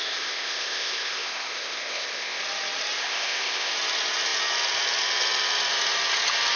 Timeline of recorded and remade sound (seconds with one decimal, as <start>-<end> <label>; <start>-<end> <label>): 0.0-2.4 remade; 2.4-3.0 recorded; 3.0-3.7 remade; 3.7-6.6 recorded